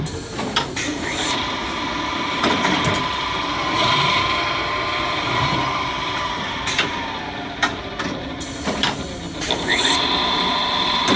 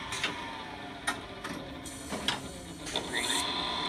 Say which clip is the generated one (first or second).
first